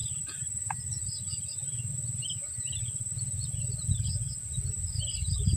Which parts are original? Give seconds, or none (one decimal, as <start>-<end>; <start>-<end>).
0.0-5.6